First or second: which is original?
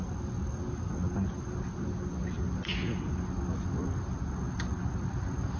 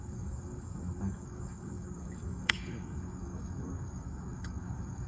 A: first